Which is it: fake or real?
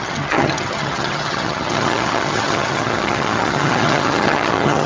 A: fake